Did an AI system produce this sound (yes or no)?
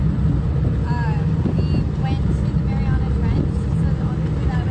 no